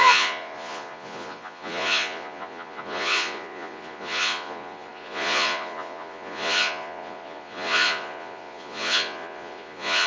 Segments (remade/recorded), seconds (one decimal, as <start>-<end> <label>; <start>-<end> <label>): 0.0-10.1 remade